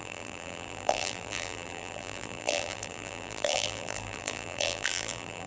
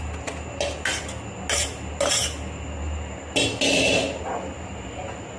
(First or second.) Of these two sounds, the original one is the second